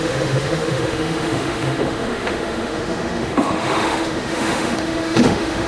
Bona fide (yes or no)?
no